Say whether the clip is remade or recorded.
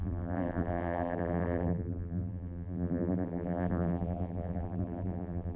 remade